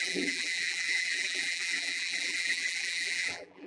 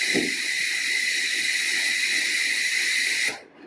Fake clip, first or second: first